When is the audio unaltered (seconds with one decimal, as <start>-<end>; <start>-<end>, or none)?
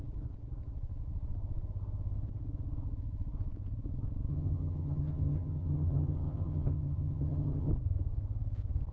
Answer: 0.0-4.3; 7.7-8.9